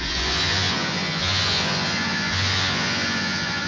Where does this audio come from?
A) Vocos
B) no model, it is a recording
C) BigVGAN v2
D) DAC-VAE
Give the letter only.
A